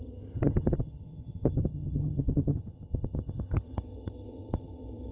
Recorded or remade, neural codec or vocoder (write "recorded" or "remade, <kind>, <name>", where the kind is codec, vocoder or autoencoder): remade, vocoder, HiFi-GAN